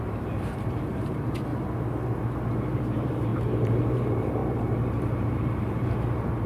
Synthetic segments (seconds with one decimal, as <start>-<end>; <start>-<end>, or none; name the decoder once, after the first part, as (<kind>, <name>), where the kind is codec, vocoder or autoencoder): 0.0-1.5 (vocoder, BigVGAN v2); 2.5-6.5